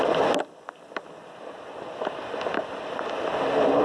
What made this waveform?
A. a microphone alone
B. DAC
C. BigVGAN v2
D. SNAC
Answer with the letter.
A